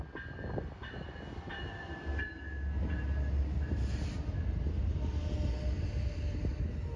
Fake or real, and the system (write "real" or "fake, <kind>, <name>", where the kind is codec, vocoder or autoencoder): real